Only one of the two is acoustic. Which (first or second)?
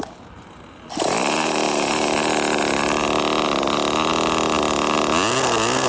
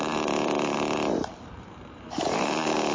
first